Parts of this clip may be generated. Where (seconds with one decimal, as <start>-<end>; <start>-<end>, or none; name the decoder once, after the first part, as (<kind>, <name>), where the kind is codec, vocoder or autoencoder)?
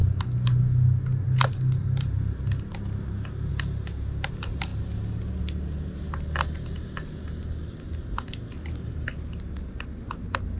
none